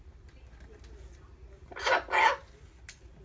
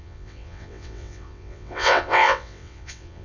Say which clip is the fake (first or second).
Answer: second